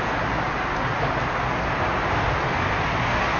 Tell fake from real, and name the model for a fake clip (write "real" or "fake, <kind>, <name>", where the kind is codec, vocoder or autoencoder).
real